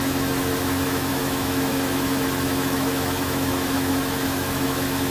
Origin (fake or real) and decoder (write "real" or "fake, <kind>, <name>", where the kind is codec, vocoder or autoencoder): fake, autoencoder, DAC-VAE